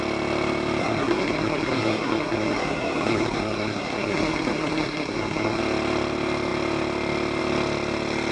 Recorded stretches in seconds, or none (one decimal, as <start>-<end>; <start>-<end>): 0.0-0.8; 5.6-8.3